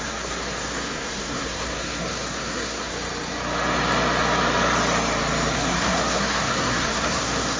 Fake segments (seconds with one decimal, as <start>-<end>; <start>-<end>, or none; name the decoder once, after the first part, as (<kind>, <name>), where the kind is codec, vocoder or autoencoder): 0.0-2.9 (codec, SNAC); 5.5-7.6